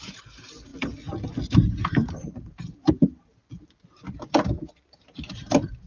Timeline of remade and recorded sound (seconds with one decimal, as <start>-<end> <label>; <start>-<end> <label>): 0.0-0.7 remade; 0.7-1.4 recorded; 1.4-3.4 remade; 3.4-4.6 recorded; 4.6-5.9 remade